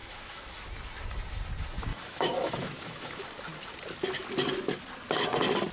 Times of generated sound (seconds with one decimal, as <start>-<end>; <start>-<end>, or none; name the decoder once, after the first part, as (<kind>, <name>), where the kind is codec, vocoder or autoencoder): 0.0-0.7 (autoencoder, DAC-VAE); 1.9-3.2